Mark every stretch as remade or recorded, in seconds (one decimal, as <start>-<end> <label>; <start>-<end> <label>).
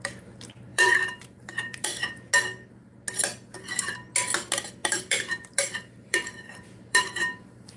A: 0.0-0.7 recorded; 0.7-2.3 remade; 2.3-4.8 recorded; 4.8-7.8 remade